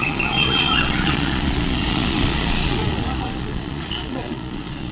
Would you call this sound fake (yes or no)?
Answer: yes